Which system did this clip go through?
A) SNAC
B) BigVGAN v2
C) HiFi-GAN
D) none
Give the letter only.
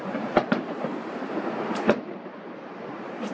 B